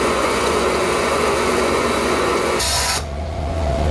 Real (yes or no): no